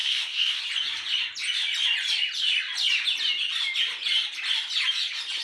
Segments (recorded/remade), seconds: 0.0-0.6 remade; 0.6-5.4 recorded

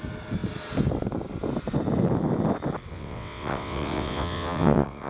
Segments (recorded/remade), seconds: 0.0-2.9 recorded; 2.9-5.1 remade

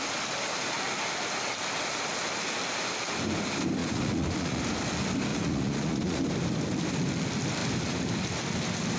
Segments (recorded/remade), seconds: 0.0-3.8 recorded; 3.8-4.6 remade; 4.6-5.3 recorded; 5.3-6.2 remade; 6.2-9.0 recorded

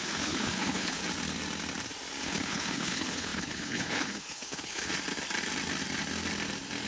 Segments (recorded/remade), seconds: 0.0-1.0 remade; 1.0-2.2 recorded; 2.2-4.9 remade; 4.9-6.9 recorded

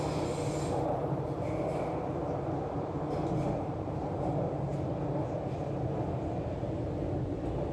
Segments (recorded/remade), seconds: 0.0-7.7 recorded